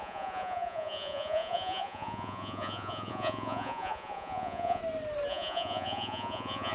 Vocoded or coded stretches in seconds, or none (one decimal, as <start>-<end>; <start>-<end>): 0.0-4.8; 5.3-6.7